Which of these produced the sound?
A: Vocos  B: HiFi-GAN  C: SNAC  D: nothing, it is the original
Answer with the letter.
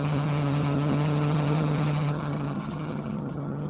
B